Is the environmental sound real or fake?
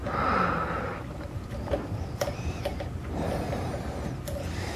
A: real